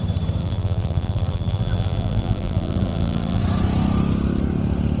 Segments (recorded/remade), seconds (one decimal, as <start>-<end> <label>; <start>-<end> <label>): 0.0-0.4 recorded; 0.4-3.4 remade; 3.4-5.0 recorded